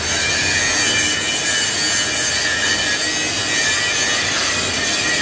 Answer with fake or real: real